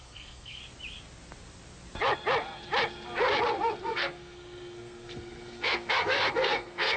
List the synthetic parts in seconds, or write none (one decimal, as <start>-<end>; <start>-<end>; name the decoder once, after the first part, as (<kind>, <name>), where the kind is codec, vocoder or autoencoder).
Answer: 0.0-0.6 (codec, SNAC); 3.8-7.0